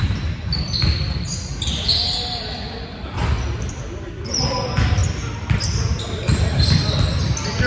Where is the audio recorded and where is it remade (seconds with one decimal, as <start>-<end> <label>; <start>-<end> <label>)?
0.0-7.7 recorded

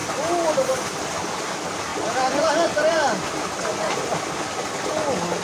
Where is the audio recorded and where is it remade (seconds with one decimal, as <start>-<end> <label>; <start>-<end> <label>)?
0.0-1.3 remade; 1.3-5.4 recorded

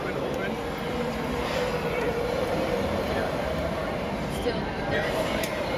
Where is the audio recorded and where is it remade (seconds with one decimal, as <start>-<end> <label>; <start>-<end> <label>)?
0.0-0.4 remade; 0.4-1.9 recorded; 1.9-5.8 remade

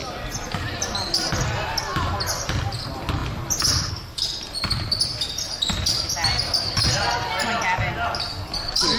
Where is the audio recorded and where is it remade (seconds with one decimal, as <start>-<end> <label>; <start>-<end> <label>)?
0.0-1.8 remade; 1.8-9.0 recorded

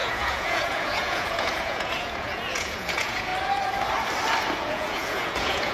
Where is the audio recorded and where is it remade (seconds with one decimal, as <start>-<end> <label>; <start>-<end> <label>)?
0.0-3.3 remade; 3.3-4.6 recorded; 4.6-5.7 remade